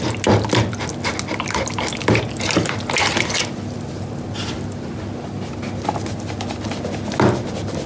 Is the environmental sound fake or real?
real